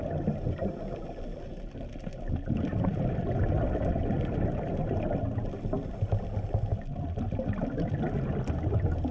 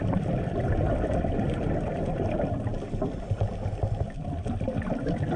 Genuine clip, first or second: first